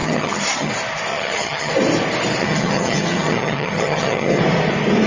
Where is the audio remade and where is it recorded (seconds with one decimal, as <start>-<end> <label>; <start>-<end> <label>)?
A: 0.0-0.7 remade; 0.7-1.1 recorded; 1.1-1.7 remade; 1.7-2.4 recorded; 2.4-4.4 remade; 4.4-5.1 recorded